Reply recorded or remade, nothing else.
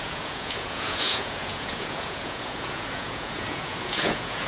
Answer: remade